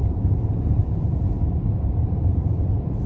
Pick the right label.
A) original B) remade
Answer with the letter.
B